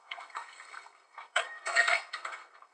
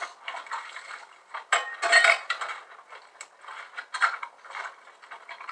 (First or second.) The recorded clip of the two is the second